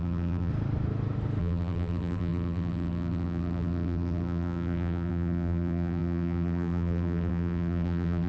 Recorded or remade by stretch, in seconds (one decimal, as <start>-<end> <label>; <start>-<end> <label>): 0.0-0.5 remade; 0.5-1.4 recorded; 1.4-8.3 remade